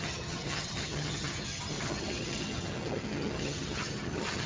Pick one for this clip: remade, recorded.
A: remade